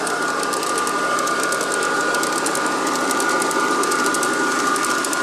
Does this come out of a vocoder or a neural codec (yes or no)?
yes